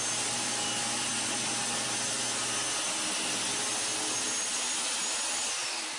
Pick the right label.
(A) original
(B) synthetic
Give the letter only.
A